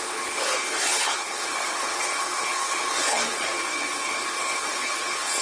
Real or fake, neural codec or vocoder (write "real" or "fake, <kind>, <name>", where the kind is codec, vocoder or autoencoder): fake, codec, HILCodec